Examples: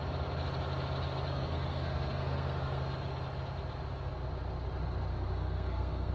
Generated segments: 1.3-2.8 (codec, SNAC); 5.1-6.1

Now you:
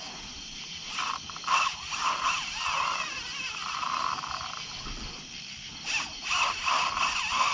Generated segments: none

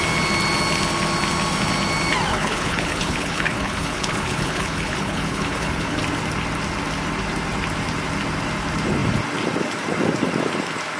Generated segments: 2.3-6.0 (codec, HILCodec)

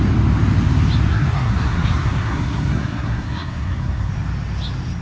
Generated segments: 1.1-4.1 (codec, SNAC)